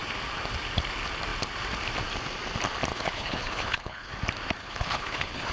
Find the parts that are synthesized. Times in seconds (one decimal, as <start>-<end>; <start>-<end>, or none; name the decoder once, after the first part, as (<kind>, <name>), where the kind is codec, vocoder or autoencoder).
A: 2.9-4.1 (codec, HILCodec); 4.6-5.5